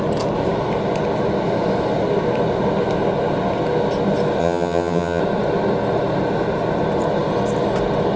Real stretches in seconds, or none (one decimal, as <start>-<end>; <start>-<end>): 0.0-4.4; 5.2-8.2